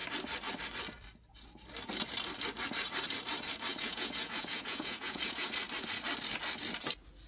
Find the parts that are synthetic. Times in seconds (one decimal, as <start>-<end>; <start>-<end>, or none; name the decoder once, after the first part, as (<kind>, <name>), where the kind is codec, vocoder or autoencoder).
3.7-5.5 (vocoder, Vocos)